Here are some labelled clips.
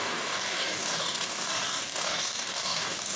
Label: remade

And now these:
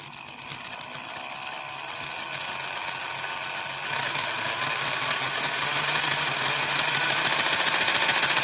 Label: recorded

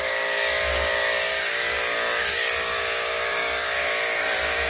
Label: remade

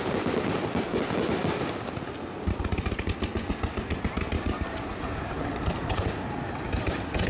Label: recorded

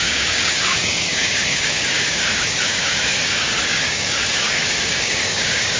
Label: remade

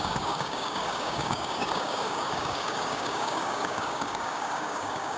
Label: remade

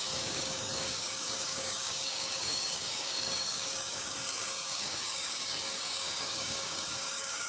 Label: remade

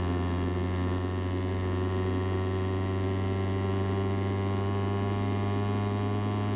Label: recorded